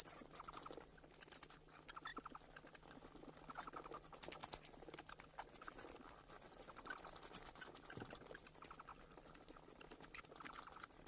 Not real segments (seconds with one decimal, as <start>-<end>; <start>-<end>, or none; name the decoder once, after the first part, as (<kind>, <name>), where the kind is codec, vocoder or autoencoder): none